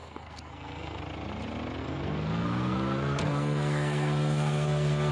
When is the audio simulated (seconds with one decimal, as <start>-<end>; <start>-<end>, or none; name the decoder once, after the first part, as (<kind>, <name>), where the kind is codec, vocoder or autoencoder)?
0.0-1.0 (codec, SNAC); 1.8-5.1